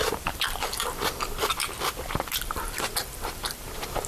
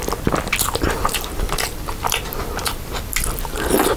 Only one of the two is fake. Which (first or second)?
first